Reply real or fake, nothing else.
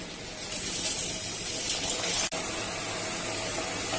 real